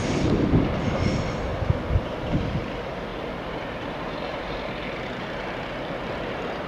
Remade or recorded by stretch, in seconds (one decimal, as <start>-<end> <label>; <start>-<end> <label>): 0.0-1.5 remade; 1.5-2.3 recorded; 2.3-6.7 remade